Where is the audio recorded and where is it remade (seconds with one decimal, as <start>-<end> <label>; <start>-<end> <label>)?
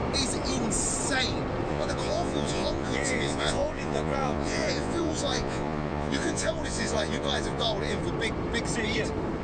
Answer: 0.0-1.7 recorded; 1.7-8.0 remade; 8.0-9.4 recorded